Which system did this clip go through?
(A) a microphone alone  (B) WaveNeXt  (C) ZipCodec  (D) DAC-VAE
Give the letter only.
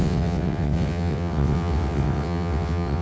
B